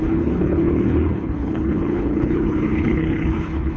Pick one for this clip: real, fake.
fake